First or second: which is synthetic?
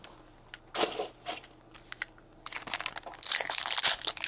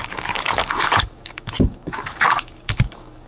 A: second